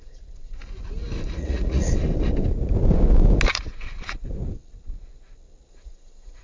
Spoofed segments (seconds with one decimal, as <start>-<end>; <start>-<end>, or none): 0.0-0.6; 1.3-1.9; 5.7-6.4